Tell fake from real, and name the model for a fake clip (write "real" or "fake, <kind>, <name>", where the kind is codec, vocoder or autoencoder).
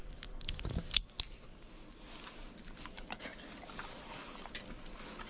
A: real